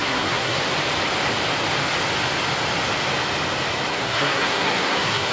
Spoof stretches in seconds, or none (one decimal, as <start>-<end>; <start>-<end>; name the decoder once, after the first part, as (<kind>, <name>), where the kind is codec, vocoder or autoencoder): 0.0-0.6 (codec, SNAC); 3.9-5.3